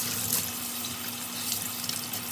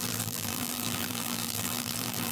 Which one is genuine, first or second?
first